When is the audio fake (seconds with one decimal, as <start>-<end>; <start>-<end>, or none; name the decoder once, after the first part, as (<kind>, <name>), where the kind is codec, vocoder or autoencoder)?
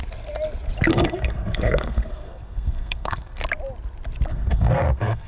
0.9-3.4 (codec, SNAC); 4.3-5.3